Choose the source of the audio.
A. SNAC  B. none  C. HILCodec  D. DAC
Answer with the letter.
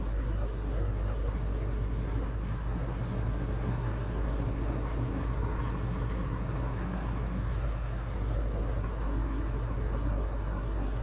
A